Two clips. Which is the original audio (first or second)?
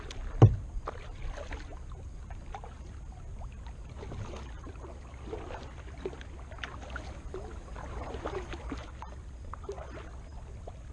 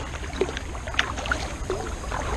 first